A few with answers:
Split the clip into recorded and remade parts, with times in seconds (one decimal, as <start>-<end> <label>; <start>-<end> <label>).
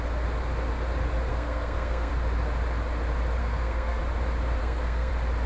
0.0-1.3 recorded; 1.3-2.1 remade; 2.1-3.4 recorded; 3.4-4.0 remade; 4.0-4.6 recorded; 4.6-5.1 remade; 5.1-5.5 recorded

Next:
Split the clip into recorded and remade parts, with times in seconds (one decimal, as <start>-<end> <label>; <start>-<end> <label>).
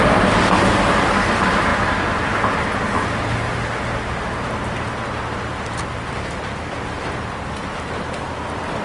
0.0-8.8 recorded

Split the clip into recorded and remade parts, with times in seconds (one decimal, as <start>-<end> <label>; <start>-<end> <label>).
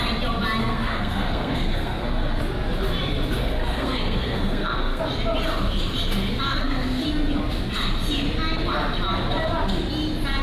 0.0-0.6 recorded; 0.6-2.4 remade; 2.4-3.4 recorded; 3.4-5.0 remade; 5.0-6.4 recorded; 6.4-7.0 remade; 7.0-10.4 recorded